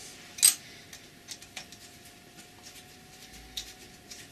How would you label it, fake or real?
real